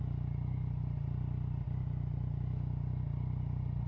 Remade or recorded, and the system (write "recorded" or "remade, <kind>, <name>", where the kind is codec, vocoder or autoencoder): recorded